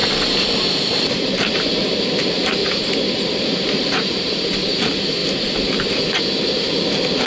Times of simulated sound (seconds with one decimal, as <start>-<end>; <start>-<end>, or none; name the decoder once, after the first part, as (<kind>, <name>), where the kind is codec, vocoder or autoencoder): 0.0-2.6 (vocoder, BigVGAN v2); 3.3-5.2; 6.4-7.3